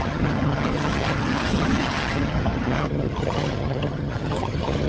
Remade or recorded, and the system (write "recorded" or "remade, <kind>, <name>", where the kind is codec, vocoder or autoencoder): remade, vocoder, HiFi-GAN